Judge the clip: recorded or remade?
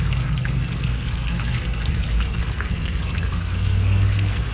remade